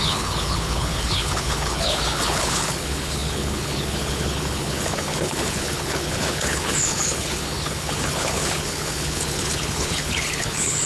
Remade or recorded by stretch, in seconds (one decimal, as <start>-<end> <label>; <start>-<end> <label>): 0.0-10.9 remade